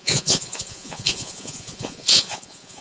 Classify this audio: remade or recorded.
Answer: remade